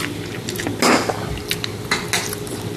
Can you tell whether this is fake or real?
real